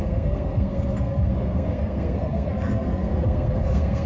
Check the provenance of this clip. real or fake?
fake